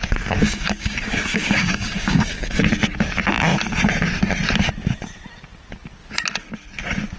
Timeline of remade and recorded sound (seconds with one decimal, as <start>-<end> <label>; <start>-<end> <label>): 0.0-0.4 recorded; 0.4-2.6 remade; 2.6-7.2 recorded